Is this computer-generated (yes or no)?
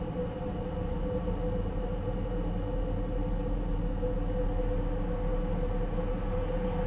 no